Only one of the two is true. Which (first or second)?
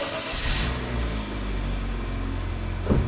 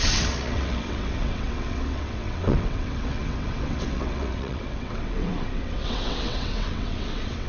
first